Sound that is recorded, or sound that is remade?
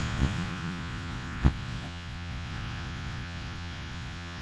remade